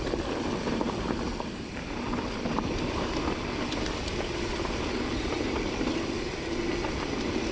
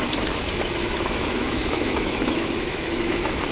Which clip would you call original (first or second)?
first